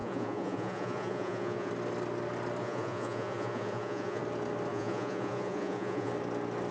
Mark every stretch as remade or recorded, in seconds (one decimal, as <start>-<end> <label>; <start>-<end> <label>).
0.0-1.7 remade; 1.7-2.6 recorded; 2.6-4.2 remade; 4.2-4.7 recorded; 4.7-6.1 remade; 6.1-6.7 recorded